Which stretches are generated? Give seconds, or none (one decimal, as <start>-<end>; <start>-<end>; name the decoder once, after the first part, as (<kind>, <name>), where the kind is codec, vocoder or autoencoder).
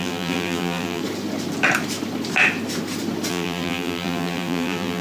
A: 0.0-1.0 (vocoder, BigVGAN v2); 3.3-5.0